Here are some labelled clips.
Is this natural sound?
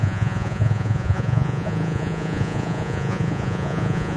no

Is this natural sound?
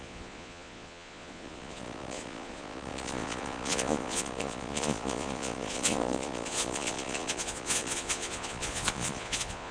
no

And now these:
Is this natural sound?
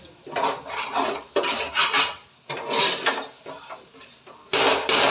yes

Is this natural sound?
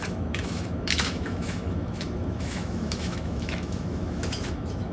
no